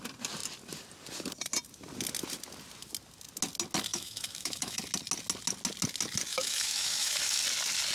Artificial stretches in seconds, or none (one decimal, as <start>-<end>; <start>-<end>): 3.9-4.8; 6.3-7.4

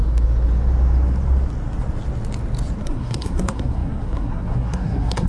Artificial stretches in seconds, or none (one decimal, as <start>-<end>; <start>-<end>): 2.8-5.3

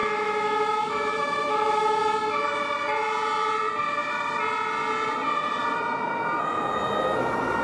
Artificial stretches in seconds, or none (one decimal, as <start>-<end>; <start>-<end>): 0.0-2.0

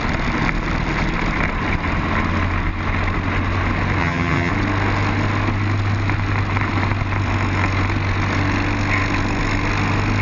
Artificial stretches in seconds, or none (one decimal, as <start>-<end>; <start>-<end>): 4.0-4.5

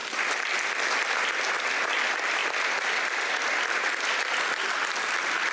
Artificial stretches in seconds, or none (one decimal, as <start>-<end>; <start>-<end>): none

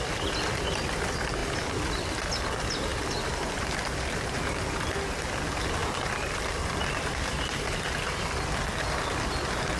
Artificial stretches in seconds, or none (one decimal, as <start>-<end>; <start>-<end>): 1.4-1.9; 5.8-8.3

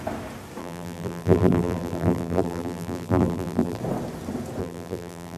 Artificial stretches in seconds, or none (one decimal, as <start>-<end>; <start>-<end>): 0.6-3.8; 4.6-5.4